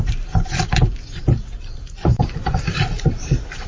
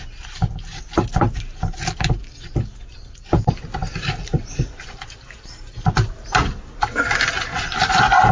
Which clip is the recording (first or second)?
second